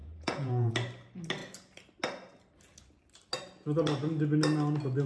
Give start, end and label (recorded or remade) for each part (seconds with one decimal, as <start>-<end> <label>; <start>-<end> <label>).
0.0-0.7 remade; 0.7-5.1 recorded